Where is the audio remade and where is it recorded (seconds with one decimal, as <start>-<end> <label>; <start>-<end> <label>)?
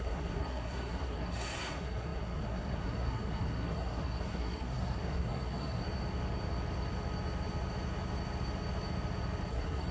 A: 0.0-5.8 remade; 5.8-9.5 recorded; 9.5-9.9 remade